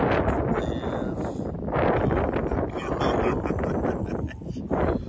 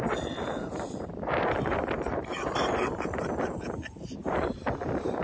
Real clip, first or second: first